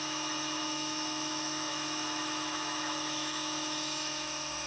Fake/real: fake